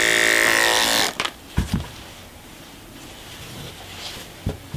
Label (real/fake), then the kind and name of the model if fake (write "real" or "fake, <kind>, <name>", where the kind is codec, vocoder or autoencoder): real